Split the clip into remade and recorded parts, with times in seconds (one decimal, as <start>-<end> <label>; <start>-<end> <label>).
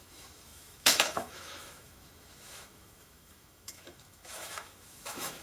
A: 0.0-5.4 remade